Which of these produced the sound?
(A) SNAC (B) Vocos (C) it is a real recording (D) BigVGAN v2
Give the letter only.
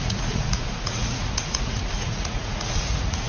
B